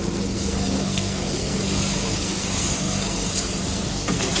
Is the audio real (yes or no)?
no